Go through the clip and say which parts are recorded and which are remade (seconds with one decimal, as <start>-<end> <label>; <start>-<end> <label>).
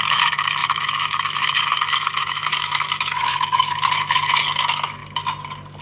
0.0-5.0 remade; 5.0-5.8 recorded